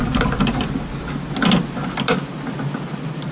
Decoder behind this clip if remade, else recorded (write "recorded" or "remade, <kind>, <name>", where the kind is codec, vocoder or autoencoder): recorded